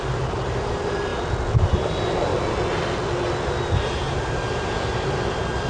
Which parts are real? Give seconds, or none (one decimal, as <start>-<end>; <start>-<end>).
1.1-1.6; 2.3-3.5